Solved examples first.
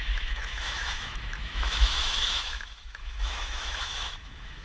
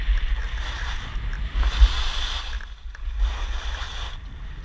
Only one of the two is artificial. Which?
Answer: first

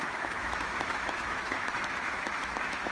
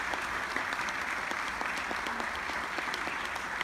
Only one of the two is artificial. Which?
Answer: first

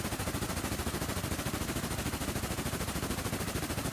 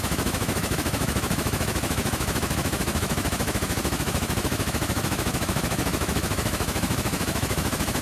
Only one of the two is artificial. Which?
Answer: second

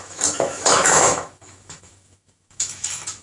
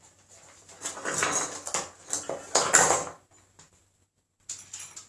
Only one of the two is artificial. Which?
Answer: first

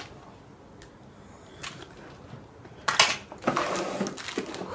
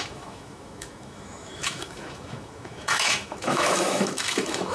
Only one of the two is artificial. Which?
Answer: second